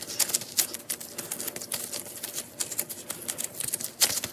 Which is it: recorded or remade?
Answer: recorded